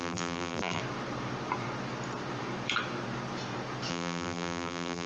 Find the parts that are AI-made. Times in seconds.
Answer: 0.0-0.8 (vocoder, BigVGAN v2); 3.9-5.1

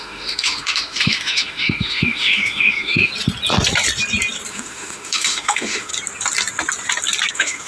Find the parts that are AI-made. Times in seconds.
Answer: 0.0-3.1 (autoencoder, DAC-VAE); 4.5-5.9; 7.3-7.7

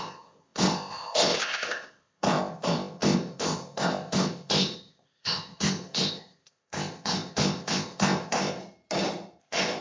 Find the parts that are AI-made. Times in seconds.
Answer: 0.0-8.6 (codec, ZipCodec); 9.4-9.8

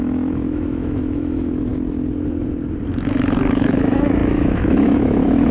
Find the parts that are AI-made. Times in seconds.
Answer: 0.0-1.7 (autoencoder, DAC-VAE); 3.5-5.5

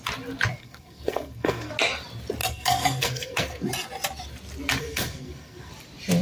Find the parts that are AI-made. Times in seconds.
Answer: 0.6-1.7 (codec, SNAC); 2.4-3.7; 4.8-5.7